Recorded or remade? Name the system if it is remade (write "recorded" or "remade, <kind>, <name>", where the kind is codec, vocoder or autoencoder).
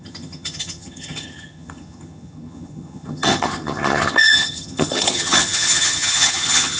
remade, vocoder, HiFi-GAN